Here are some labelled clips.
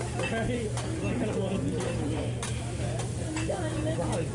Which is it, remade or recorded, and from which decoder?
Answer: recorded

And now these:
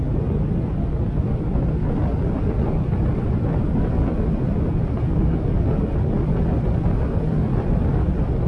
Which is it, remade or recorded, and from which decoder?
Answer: recorded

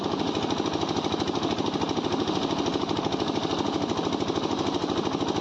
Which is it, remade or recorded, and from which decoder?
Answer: recorded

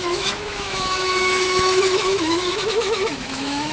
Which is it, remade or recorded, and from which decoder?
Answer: remade, autoencoder, DAC-VAE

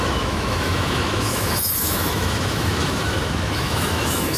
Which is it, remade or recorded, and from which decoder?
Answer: remade, autoencoder, DAC-VAE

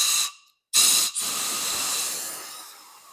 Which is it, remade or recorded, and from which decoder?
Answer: recorded